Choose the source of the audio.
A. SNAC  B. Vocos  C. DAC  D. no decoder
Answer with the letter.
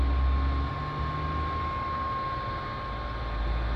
D